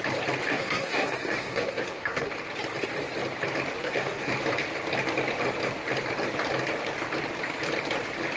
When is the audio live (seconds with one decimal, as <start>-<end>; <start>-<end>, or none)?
0.0-0.5; 2.3-3.8; 4.3-8.4